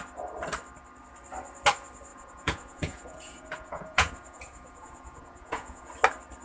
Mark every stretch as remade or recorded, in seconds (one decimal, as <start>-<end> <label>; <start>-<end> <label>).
0.0-2.1 recorded; 2.1-5.9 remade; 5.9-6.4 recorded